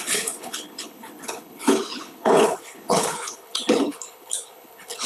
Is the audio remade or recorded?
remade